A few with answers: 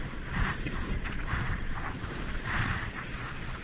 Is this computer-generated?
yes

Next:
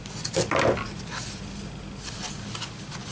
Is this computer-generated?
no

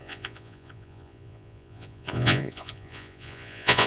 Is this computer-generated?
yes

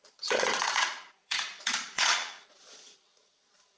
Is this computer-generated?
yes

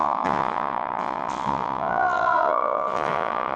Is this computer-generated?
yes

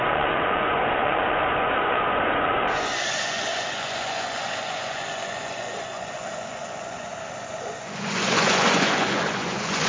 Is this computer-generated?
yes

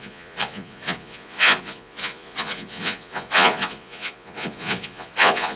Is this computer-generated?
yes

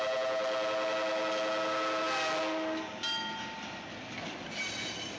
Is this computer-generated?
no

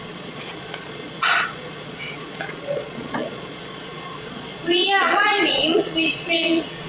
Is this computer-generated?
yes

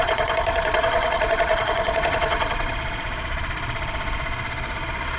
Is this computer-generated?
yes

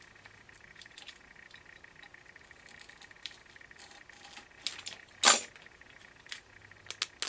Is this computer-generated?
no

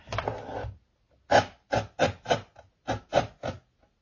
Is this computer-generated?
no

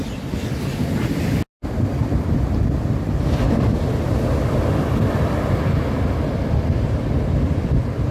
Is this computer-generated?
no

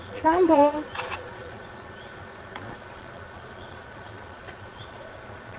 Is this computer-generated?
yes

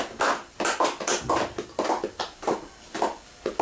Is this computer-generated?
no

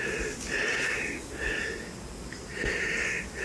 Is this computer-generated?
no